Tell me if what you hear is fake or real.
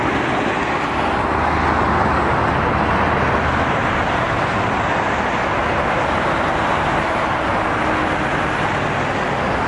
real